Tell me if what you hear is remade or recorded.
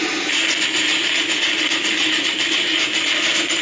recorded